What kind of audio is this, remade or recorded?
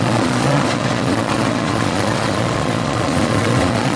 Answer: remade